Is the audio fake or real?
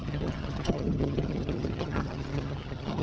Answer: fake